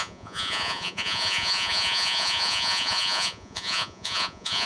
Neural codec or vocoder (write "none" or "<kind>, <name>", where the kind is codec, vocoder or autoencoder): vocoder, Vocos